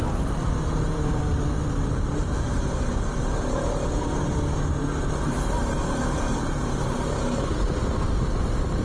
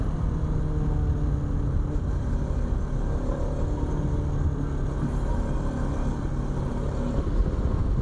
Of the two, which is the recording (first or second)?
second